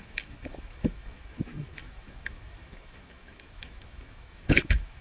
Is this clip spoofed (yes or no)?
yes